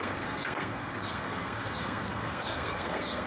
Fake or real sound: fake